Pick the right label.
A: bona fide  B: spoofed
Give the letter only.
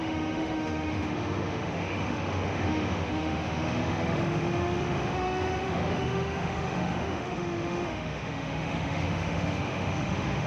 B